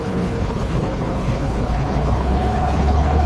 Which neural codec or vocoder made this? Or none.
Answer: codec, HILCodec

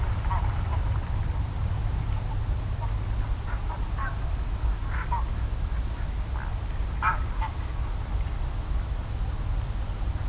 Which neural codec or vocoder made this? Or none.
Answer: none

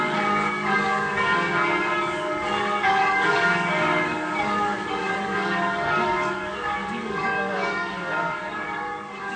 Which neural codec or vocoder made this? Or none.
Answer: codec, DAC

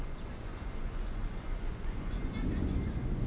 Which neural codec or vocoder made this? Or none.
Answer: vocoder, Vocos